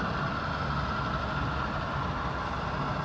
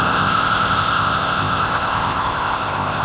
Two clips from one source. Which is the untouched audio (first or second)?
first